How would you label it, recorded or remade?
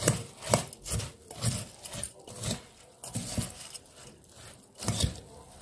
recorded